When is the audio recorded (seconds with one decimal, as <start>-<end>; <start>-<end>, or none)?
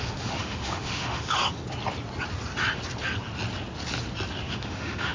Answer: 1.4-4.5